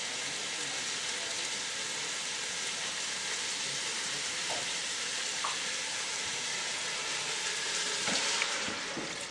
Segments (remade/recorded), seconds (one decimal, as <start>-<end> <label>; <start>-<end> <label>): 0.0-3.9 recorded; 3.9-8.7 remade; 8.7-9.3 recorded